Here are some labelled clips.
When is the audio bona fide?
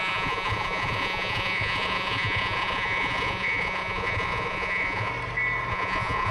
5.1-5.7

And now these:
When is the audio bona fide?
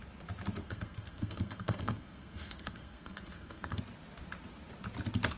0.0-0.6; 3.8-5.4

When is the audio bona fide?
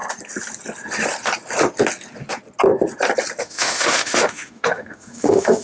0.0-3.4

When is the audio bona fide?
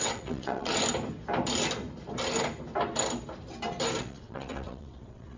0.8-4.0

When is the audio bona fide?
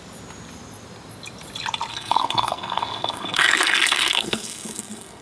0.0-1.9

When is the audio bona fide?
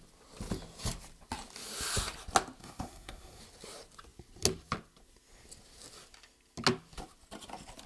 0.0-2.6; 3.4-7.9